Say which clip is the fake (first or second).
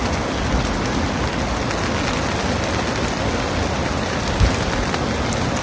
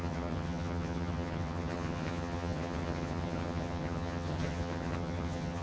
second